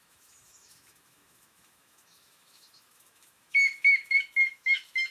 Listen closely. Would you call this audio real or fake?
fake